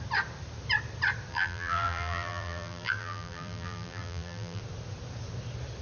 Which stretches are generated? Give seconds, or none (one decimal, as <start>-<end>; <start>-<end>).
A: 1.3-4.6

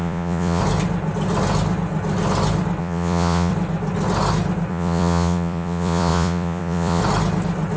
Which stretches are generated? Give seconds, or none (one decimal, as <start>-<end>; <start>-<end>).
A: 0.0-0.6; 2.8-3.5; 4.7-7.0

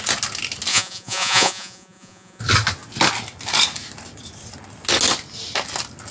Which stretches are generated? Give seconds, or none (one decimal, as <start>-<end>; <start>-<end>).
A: 0.7-2.4

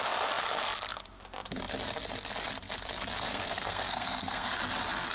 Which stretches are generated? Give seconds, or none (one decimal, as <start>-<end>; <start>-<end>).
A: 3.3-4.5